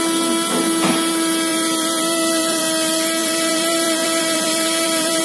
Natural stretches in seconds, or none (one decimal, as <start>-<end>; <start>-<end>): 0.0-1.5; 2.6-3.2

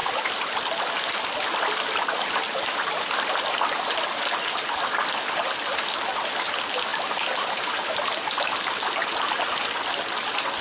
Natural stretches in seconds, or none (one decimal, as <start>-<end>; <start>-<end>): 4.2-6.9; 8.7-10.6

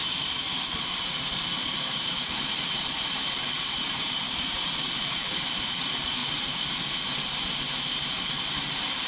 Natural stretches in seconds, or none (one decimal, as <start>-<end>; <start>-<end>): 0.0-1.6; 5.6-6.2; 8.1-9.1

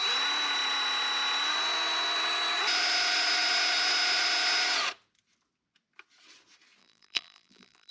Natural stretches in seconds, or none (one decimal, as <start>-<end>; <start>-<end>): 0.0-6.8

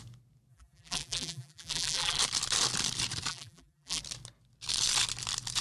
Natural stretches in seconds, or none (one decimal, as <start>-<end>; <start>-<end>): 0.0-0.5; 2.2-3.3; 4.0-5.6